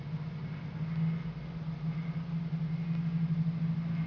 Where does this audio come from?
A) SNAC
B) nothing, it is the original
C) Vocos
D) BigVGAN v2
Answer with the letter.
B